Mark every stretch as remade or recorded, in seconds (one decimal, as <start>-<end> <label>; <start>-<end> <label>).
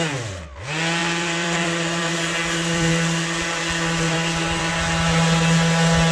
0.0-1.0 recorded; 1.0-4.7 remade; 4.7-6.1 recorded